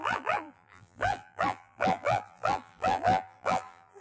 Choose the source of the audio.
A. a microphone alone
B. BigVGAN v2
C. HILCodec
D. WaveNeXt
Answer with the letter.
B